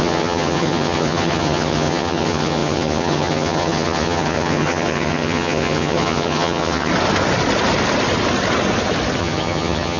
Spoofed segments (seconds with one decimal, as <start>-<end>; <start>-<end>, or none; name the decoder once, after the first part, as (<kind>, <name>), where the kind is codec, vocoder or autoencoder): 0.0-6.9 (vocoder, HiFi-GAN); 9.2-10.0